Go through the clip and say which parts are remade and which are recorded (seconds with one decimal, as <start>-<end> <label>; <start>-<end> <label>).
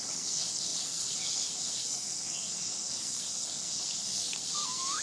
0.0-5.0 remade